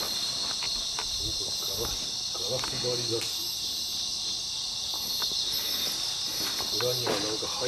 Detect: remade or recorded recorded